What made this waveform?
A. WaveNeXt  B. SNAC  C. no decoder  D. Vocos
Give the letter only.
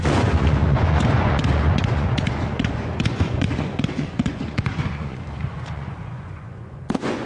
D